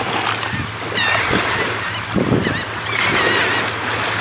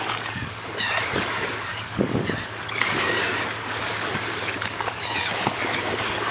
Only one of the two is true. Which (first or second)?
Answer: first